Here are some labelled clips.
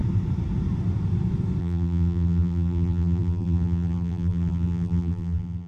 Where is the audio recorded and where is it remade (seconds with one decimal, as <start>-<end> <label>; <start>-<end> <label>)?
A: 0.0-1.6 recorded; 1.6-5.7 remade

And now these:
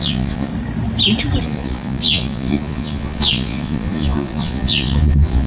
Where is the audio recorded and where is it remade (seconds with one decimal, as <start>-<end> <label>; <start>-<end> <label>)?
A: 0.0-0.5 remade; 0.5-1.4 recorded; 1.4-5.5 remade

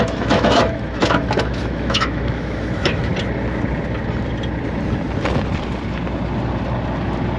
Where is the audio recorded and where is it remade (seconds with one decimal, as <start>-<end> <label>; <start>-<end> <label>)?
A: 0.0-3.1 remade; 3.1-7.4 recorded

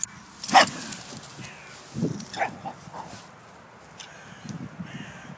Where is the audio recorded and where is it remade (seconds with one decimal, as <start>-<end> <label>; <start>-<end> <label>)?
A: 0.0-5.4 recorded

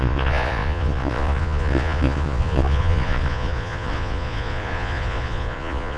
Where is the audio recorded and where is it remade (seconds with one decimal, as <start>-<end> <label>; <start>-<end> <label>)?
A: 0.0-6.0 remade

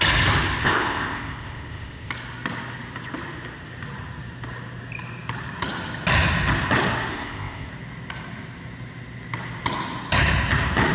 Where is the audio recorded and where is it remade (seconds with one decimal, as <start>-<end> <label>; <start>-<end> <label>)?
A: 0.0-0.6 recorded; 0.6-2.1 remade; 2.1-7.1 recorded; 7.1-7.7 remade; 7.7-10.9 recorded

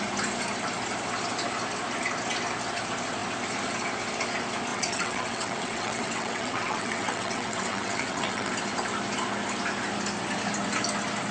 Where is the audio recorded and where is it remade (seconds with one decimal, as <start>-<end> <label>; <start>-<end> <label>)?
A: 0.0-4.7 recorded; 4.7-8.5 remade; 8.5-11.3 recorded

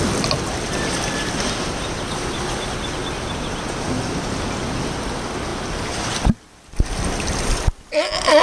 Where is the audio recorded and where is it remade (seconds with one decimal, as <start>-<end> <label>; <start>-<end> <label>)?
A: 0.0-8.4 recorded